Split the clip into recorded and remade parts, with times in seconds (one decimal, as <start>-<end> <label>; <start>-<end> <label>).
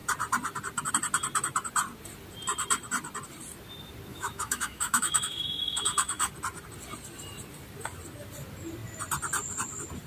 0.0-4.1 recorded; 4.1-6.3 remade; 6.3-10.1 recorded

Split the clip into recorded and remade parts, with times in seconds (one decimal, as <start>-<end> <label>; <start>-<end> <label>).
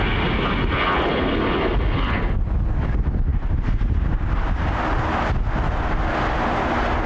0.0-3.3 recorded; 3.3-5.0 remade; 5.0-7.1 recorded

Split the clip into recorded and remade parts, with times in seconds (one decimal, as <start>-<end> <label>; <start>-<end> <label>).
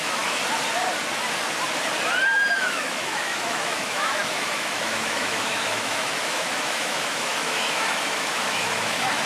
0.0-0.4 remade; 0.4-2.5 recorded; 2.5-9.3 remade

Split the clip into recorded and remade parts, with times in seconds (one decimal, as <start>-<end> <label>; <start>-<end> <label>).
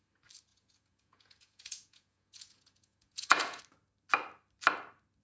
0.0-0.5 recorded; 0.5-3.6 remade; 3.6-5.2 recorded